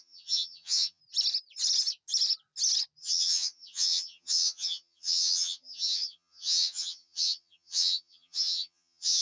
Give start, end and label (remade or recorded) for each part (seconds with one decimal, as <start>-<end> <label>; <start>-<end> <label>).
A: 0.0-1.0 remade; 1.0-3.0 recorded; 3.0-9.2 remade